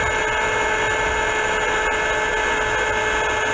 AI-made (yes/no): no